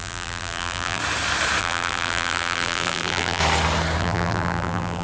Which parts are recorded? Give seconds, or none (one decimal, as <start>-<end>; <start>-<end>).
1.0-1.6; 3.4-4.0

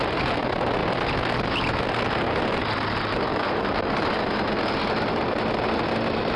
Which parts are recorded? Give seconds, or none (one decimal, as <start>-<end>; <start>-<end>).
0.0-3.3; 4.1-6.4

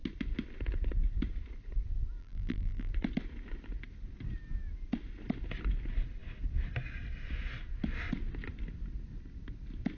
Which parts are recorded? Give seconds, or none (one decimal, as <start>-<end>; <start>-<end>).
0.0-2.2; 2.9-10.0

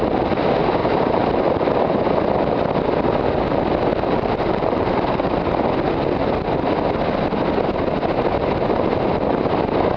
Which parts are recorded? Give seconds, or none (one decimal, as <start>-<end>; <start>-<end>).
0.0-0.8; 1.5-3.9; 5.4-10.0

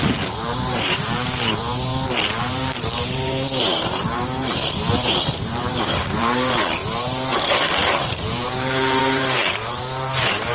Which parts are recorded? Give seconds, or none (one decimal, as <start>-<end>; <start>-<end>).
1.9-2.4

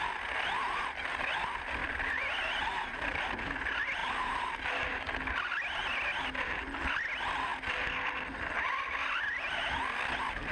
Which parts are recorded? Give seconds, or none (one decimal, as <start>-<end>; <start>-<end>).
0.0-1.8; 3.2-4.0; 4.5-10.5

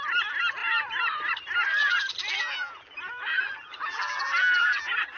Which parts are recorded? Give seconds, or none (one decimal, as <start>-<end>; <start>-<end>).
0.0-1.8